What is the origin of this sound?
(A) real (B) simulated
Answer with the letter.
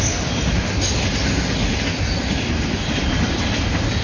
A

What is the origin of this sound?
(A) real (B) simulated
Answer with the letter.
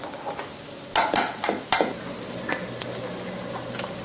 A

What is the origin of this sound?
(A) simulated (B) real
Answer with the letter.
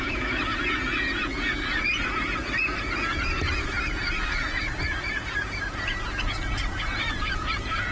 A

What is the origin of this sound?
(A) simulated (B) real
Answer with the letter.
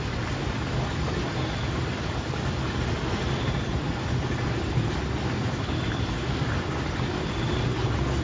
B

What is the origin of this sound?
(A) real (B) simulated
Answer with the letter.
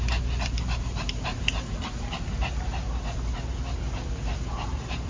A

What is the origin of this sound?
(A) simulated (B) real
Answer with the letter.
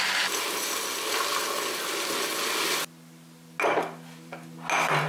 B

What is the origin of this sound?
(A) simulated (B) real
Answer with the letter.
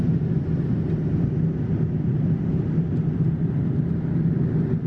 B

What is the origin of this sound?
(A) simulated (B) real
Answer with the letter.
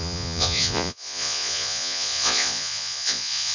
A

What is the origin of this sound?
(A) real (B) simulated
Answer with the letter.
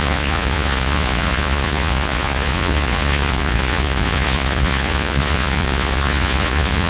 B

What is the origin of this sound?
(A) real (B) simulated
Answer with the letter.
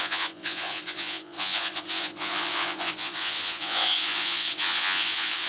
B